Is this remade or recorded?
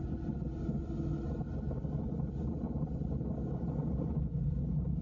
recorded